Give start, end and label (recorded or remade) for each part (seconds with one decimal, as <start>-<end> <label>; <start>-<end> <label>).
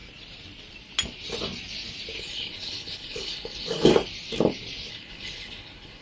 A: 0.0-2.2 recorded; 2.2-3.9 remade; 3.9-4.9 recorded; 4.9-6.0 remade